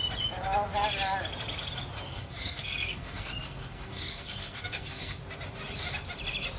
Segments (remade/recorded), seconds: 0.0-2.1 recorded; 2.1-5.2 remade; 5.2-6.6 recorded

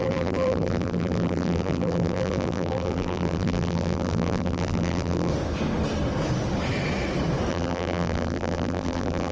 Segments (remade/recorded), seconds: 0.0-5.3 remade; 5.3-7.5 recorded; 7.5-9.3 remade

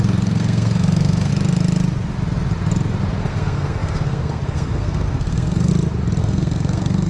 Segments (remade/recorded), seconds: 0.0-1.3 remade; 1.3-3.2 recorded; 3.2-5.7 remade; 5.7-6.2 recorded; 6.2-7.1 remade

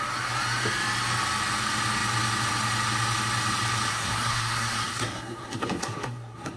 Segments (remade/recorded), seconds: 0.0-3.9 recorded; 3.9-6.6 remade

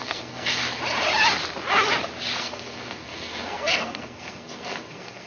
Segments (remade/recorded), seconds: 0.0-0.6 remade; 0.6-2.4 recorded; 2.4-5.3 remade

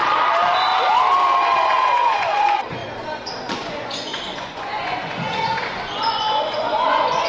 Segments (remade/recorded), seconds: 0.0-1.6 recorded; 1.6-2.8 remade; 2.8-3.6 recorded; 3.6-7.3 remade